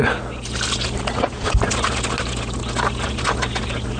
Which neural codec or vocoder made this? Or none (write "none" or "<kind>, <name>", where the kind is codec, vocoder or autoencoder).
none